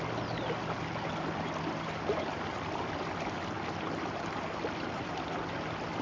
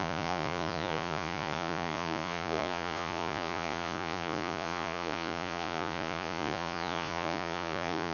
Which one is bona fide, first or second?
first